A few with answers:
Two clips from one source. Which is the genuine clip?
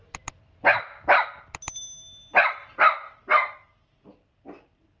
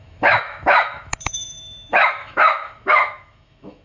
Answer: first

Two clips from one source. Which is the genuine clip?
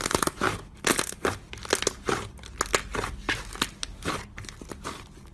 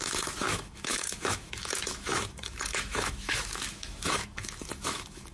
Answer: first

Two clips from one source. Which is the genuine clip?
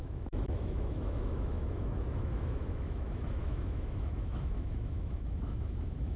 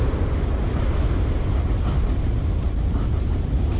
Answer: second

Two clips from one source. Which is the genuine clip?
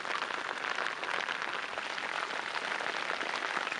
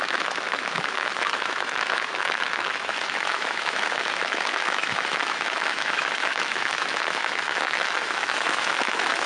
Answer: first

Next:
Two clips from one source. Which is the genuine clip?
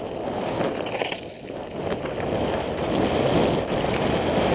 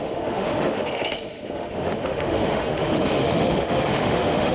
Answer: first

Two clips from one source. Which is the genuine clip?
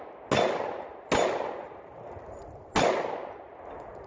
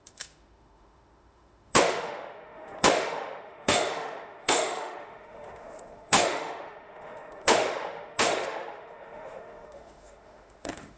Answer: first